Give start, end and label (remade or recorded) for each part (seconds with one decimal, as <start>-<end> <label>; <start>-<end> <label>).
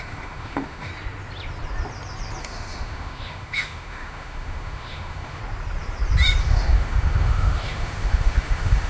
0.0-0.9 remade; 0.9-2.4 recorded; 2.4-5.4 remade; 5.4-6.4 recorded; 6.4-8.9 remade